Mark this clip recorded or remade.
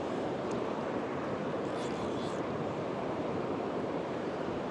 remade